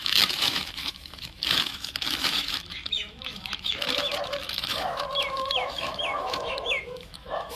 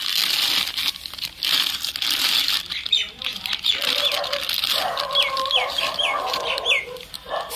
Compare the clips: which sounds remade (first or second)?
first